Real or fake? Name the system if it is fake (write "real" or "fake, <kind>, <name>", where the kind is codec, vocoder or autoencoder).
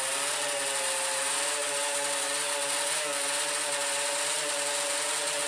real